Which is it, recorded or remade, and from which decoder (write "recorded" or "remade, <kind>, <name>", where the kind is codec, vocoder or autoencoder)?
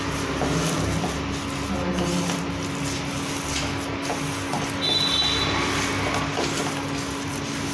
recorded